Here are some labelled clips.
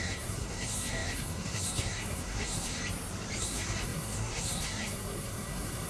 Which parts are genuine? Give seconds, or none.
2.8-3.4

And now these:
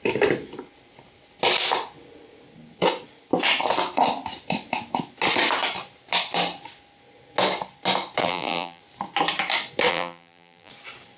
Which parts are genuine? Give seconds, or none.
0.0-8.2; 8.8-9.9; 10.7-11.2